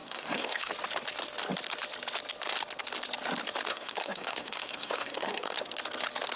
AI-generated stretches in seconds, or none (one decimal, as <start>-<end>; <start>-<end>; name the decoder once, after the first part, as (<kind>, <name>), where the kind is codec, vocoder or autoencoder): 0.0-0.7 (codec, SNAC); 3.7-5.7

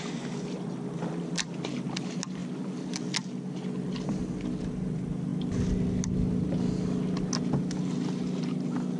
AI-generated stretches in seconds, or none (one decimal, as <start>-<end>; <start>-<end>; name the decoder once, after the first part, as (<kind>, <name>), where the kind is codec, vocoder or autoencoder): none

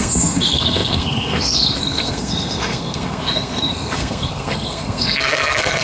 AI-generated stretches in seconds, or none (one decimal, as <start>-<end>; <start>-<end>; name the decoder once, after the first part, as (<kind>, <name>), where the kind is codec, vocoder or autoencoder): 0.0-5.8 (codec, SNAC)